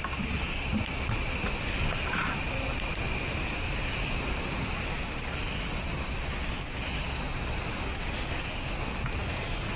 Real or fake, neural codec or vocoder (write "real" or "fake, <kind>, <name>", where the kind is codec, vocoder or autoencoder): real